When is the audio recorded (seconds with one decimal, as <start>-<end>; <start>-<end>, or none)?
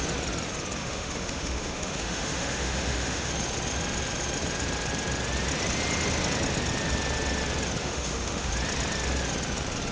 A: 0.0-0.8; 3.3-7.8; 8.5-9.9